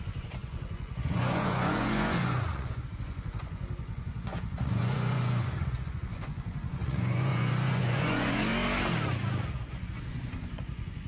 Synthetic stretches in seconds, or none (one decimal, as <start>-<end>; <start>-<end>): 0.0-8.5; 9.7-11.1